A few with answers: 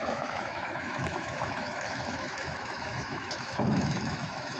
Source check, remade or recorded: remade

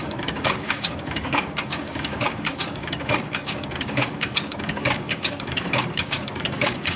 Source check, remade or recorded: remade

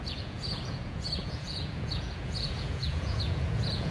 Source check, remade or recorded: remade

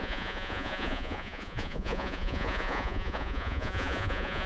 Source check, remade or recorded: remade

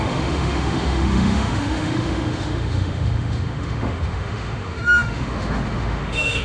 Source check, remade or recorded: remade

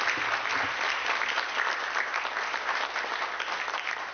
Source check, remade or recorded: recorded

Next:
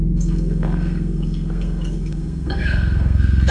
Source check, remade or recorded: remade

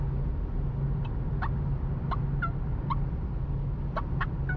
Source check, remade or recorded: recorded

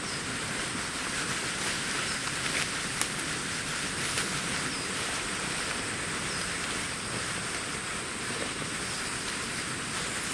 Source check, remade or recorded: recorded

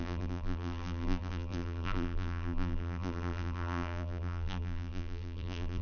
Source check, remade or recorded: remade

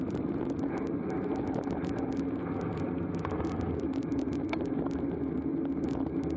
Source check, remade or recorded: recorded